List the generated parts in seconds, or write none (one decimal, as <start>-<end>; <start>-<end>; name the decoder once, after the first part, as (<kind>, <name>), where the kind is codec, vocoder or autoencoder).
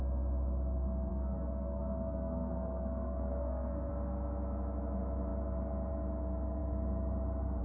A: 1.1-3.9 (codec, SNAC)